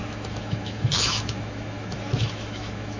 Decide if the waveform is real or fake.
fake